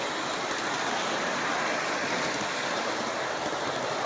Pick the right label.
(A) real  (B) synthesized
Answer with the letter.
A